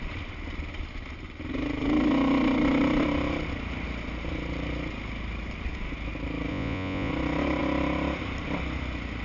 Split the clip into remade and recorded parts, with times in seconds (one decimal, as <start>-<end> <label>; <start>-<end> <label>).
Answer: 0.0-6.5 recorded; 6.5-7.1 remade; 7.1-9.2 recorded